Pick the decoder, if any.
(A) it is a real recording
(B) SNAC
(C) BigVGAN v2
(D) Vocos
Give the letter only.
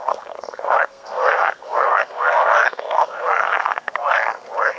B